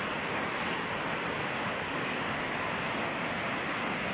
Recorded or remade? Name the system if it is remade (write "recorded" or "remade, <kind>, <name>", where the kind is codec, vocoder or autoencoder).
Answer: recorded